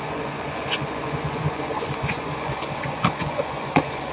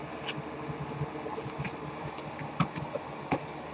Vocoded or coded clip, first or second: first